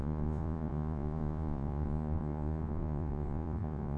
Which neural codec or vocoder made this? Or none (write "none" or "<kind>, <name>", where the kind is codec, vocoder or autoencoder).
vocoder, Vocos